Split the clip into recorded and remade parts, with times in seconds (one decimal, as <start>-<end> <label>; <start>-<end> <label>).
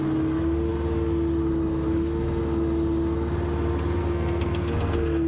0.0-4.0 recorded; 4.0-5.3 remade